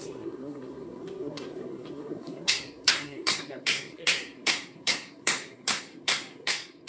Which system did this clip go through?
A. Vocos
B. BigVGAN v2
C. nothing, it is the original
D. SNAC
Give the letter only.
D